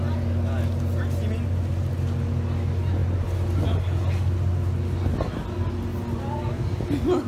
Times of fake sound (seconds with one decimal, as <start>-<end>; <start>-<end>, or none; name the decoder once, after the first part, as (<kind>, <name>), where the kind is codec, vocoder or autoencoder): none